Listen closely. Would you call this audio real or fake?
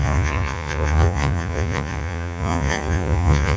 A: fake